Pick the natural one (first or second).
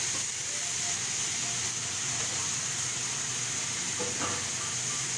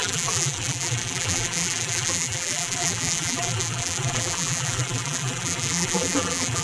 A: first